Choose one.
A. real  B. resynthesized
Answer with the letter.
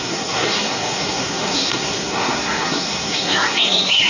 B